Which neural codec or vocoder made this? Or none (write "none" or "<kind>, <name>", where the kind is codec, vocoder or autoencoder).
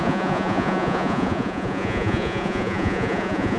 vocoder, Vocos